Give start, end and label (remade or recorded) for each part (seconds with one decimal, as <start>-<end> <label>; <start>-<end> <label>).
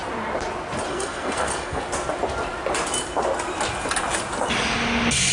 0.0-0.9 recorded; 0.9-1.8 remade; 1.8-5.3 recorded